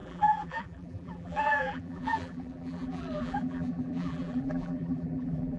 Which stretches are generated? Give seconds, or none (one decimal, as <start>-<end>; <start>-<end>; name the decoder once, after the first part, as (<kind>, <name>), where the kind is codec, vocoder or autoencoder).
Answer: 0.0-5.6 (vocoder, BigVGAN v2)